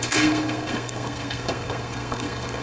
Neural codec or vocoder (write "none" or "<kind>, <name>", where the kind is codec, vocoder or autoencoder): codec, SNAC